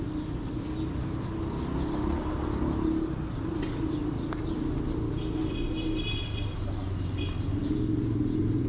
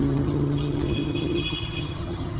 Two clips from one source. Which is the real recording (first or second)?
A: first